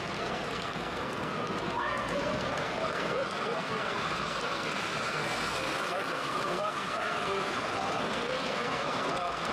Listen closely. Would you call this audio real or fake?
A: fake